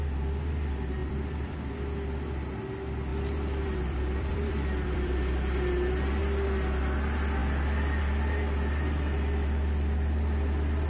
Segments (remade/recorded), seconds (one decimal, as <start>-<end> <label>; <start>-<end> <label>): 0.0-1.0 recorded; 1.0-1.7 remade; 1.7-3.1 recorded; 3.1-6.2 remade; 6.2-10.9 recorded